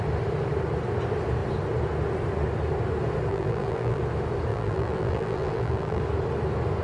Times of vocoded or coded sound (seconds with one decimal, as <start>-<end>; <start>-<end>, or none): 3.3-4.0; 4.5-6.0